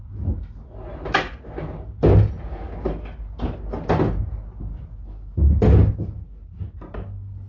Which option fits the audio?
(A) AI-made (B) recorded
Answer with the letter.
B